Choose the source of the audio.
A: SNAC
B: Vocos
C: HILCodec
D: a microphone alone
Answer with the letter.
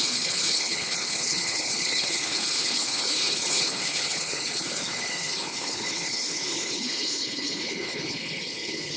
C